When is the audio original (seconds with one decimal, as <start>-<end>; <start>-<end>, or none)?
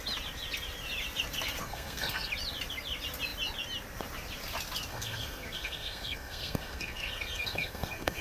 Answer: 0.0-1.6; 2.3-4.9